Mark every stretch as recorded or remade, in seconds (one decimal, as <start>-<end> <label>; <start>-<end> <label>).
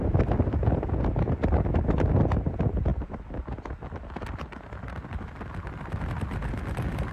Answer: 0.0-7.1 recorded